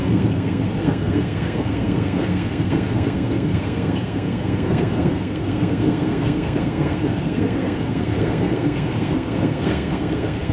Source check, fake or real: fake